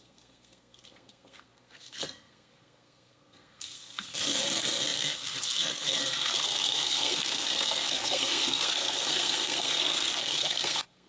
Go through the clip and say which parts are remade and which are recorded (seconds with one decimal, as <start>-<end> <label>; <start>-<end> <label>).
0.0-11.1 remade

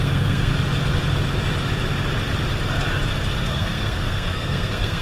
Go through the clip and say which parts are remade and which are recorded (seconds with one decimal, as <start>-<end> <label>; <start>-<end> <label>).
0.0-0.5 remade; 0.5-3.5 recorded; 3.5-5.0 remade

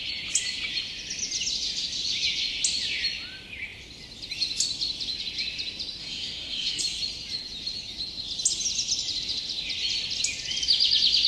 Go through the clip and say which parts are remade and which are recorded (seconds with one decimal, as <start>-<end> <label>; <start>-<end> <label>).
0.0-6.0 recorded; 6.0-6.8 remade; 6.8-11.3 recorded

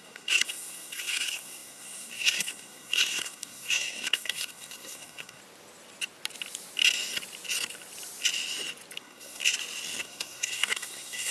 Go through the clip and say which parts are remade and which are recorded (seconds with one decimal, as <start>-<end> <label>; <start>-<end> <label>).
0.0-5.4 remade; 5.4-9.0 recorded; 9.0-9.4 remade; 9.4-10.0 recorded; 10.0-11.3 remade

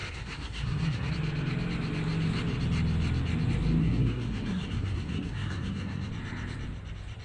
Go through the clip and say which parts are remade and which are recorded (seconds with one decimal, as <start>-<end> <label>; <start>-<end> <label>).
0.0-1.1 remade; 1.1-3.8 recorded; 3.8-6.1 remade; 6.1-7.2 recorded